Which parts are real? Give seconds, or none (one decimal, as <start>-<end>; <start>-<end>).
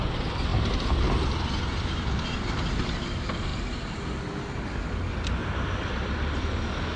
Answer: 0.0-5.4; 6.6-7.0